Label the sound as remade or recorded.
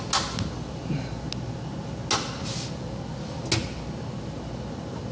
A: recorded